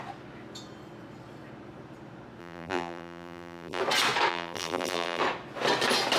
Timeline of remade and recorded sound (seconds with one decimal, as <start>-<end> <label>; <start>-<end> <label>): 0.0-2.4 recorded; 2.4-3.8 remade; 3.8-4.3 recorded; 4.3-5.2 remade; 5.2-6.2 recorded